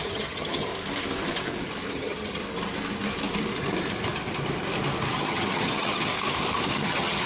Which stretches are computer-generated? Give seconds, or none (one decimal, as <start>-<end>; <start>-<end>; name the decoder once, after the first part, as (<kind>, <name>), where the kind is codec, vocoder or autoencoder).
0.0-0.7 (vocoder, HiFi-GAN); 1.9-2.4; 5.1-6.1; 6.7-7.3